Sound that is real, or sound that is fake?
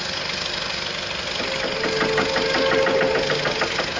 real